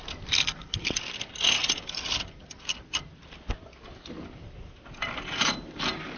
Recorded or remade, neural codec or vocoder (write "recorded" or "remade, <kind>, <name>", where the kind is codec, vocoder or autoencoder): recorded